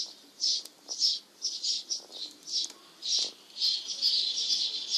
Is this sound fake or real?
real